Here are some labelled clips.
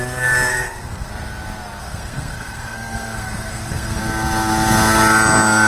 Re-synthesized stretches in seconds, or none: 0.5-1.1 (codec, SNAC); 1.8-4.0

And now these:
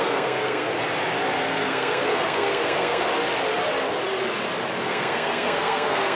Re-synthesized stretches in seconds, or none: 0.0-0.7 (codec, SNAC); 1.5-3.1; 4.8-6.1

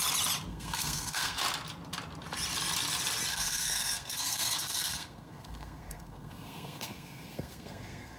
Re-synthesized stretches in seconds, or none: 0.5-1.4 (codec, SNAC); 3.3-8.2

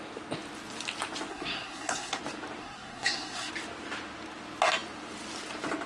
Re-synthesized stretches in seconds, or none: 1.3-2.2 (codec, SNAC); 2.6-3.5

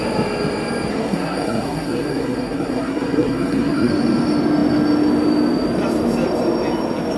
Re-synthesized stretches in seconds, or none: 0.9-3.9 (codec, SNAC)

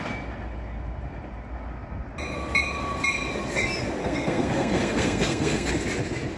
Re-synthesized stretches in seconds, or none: 4.0-5.7 (codec, SNAC)

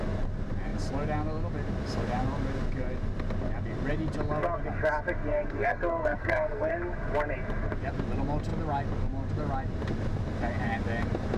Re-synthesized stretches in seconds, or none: 5.3-6.7 (codec, SNAC)

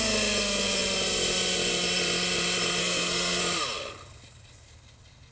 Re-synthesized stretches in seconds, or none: 2.8-3.4 (codec, SNAC)